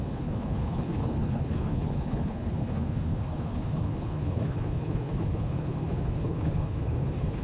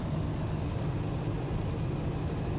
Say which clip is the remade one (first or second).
first